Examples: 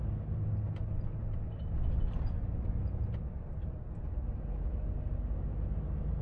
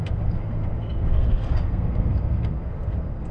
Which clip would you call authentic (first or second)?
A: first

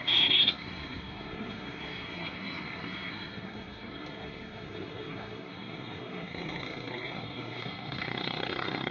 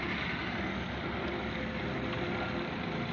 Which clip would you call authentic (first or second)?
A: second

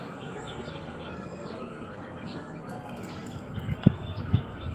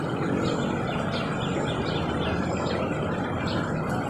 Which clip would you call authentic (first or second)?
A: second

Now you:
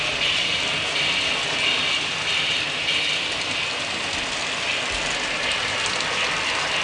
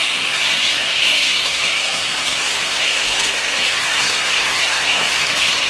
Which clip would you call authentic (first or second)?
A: first